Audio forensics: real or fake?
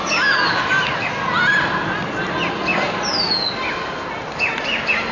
real